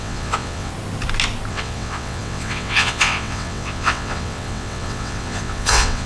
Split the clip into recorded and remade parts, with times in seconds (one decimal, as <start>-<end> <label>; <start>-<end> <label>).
0.0-0.7 remade; 0.7-1.5 recorded; 1.5-6.1 remade